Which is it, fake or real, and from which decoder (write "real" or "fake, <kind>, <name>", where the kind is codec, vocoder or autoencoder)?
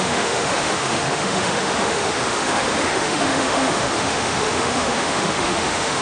fake, autoencoder, DAC-VAE